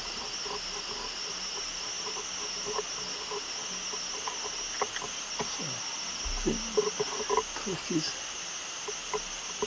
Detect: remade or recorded recorded